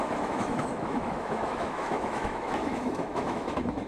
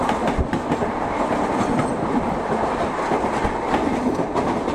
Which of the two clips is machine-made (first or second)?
first